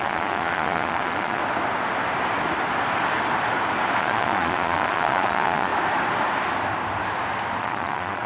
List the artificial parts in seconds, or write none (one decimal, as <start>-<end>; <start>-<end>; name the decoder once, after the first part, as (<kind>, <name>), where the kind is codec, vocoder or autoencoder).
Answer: 0.0-1.4 (vocoder, Vocos); 4.0-5.7; 7.6-8.3